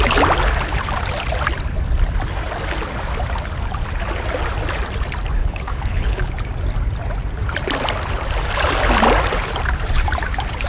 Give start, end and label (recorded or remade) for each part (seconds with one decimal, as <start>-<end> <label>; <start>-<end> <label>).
0.0-5.4 recorded; 5.4-6.3 remade; 6.3-10.7 recorded